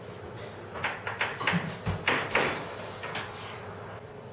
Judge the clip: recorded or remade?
recorded